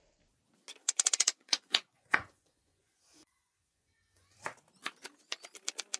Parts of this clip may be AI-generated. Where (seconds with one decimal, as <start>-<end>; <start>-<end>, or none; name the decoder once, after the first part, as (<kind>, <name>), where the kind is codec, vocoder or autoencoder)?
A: 0.8-4.4 (vocoder, Vocos)